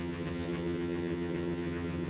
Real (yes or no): no